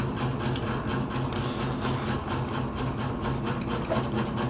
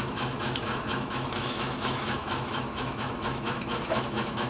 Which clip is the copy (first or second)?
second